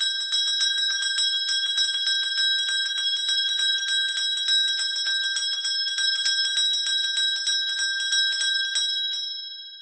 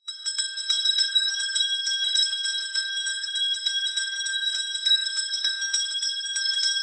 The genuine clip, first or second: first